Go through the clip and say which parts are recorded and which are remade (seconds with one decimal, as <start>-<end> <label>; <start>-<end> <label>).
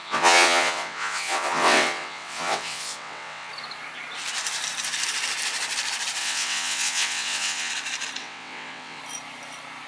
0.0-3.5 remade; 3.5-6.2 recorded; 6.2-7.7 remade; 7.7-8.2 recorded; 8.2-9.0 remade; 9.0-9.9 recorded